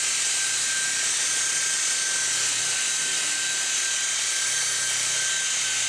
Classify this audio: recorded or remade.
recorded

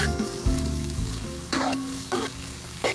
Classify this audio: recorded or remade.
remade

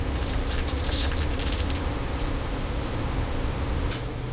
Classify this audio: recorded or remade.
remade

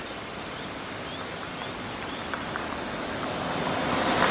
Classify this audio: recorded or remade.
recorded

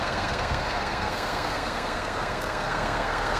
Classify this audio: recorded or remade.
remade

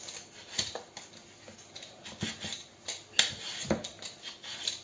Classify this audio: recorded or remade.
recorded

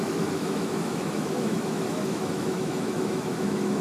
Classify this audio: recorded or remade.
remade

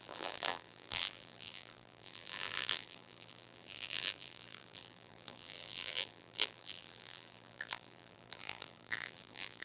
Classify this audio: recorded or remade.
remade